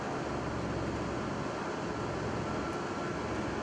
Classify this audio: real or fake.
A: real